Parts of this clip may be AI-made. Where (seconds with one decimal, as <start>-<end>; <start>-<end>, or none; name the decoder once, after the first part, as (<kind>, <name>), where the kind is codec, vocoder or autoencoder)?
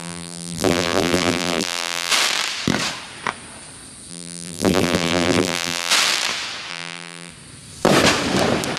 0.0-2.1 (vocoder, BigVGAN v2); 4.1-5.9; 6.7-7.3